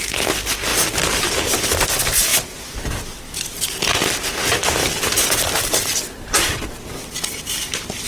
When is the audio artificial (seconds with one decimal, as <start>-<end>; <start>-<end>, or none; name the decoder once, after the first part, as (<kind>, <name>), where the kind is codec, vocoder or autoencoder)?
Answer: 4.0-5.3 (vocoder, BigVGAN v2)